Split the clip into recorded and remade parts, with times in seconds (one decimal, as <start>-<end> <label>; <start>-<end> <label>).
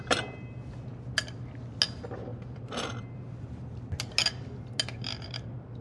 0.0-2.3 recorded; 2.3-3.7 remade; 3.7-5.8 recorded